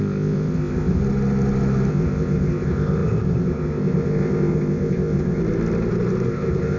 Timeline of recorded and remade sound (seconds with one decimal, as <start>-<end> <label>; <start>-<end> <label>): 0.0-1.0 remade; 1.0-1.9 recorded; 1.9-5.4 remade; 5.4-6.3 recorded; 6.3-6.8 remade